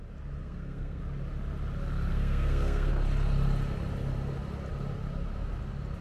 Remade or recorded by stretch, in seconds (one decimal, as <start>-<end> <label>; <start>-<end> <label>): 0.0-0.4 recorded; 0.4-1.0 remade; 1.0-2.1 recorded; 2.1-2.9 remade; 2.9-6.0 recorded